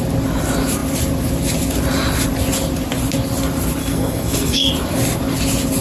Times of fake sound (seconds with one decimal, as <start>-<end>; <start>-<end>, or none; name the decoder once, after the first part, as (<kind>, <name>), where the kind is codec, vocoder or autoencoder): 3.8-4.7 (codec, SNAC)